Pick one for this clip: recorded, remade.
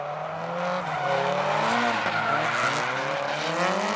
recorded